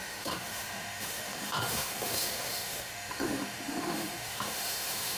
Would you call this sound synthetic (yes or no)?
yes